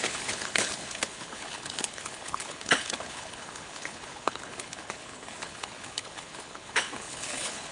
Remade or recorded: remade